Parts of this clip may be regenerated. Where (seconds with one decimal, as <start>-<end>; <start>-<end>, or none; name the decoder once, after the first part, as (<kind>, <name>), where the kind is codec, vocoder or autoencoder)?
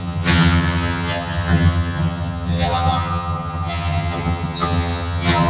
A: 0.0-5.5 (vocoder, HiFi-GAN)